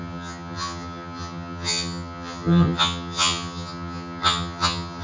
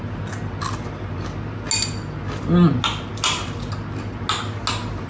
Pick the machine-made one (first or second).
first